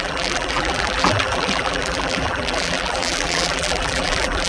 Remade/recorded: remade